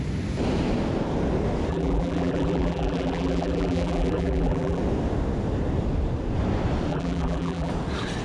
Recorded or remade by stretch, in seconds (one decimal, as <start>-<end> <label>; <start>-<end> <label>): 0.0-1.7 recorded; 1.7-4.8 remade; 4.8-6.9 recorded; 6.9-7.7 remade; 7.7-8.2 recorded